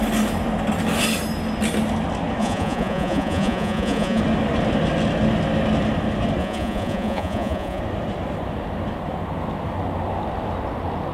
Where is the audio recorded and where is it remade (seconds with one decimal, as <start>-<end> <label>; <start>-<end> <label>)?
0.0-2.4 recorded; 2.4-4.2 remade; 4.2-6.4 recorded; 6.4-7.8 remade; 7.8-11.1 recorded